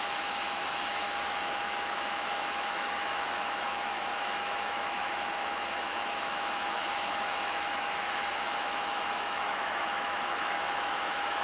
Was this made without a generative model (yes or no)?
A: no